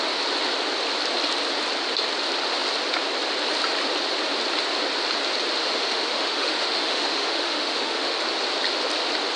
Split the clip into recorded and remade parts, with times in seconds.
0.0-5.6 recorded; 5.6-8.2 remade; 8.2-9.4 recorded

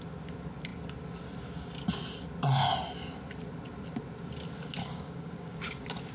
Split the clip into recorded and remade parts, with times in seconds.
0.0-4.8 recorded; 4.8-5.6 remade; 5.6-6.1 recorded

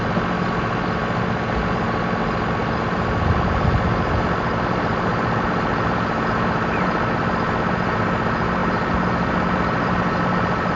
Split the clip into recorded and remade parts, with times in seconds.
0.0-10.8 recorded

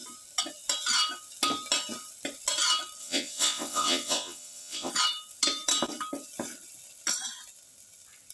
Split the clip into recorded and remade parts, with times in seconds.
0.0-3.0 recorded; 3.0-4.9 remade; 4.9-8.3 recorded

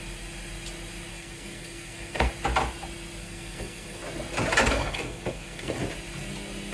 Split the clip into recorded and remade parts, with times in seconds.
0.0-1.1 recorded; 1.1-2.3 remade; 2.3-3.2 recorded; 3.2-4.0 remade; 4.0-4.6 recorded; 4.6-5.8 remade; 5.8-6.7 recorded

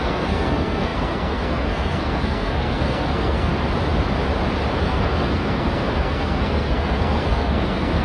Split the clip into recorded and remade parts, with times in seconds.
0.0-3.5 remade; 3.5-4.8 recorded; 4.8-8.0 remade

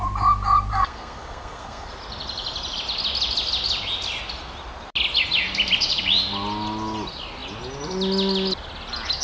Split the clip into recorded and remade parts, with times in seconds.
0.0-0.7 recorded; 0.7-1.9 remade; 1.9-9.2 recorded

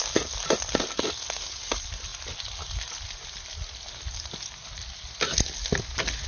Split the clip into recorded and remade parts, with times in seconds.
0.0-6.3 recorded